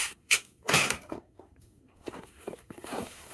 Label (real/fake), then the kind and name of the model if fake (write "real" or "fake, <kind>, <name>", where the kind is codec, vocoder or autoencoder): fake, codec, SNAC